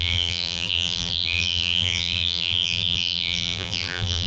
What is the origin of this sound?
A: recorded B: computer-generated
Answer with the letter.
B